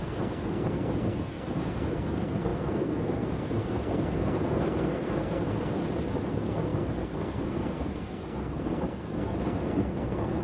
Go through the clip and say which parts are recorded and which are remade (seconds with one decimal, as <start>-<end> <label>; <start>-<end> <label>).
0.0-5.8 remade; 5.8-6.3 recorded; 6.3-10.4 remade